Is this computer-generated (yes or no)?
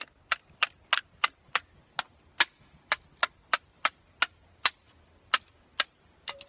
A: no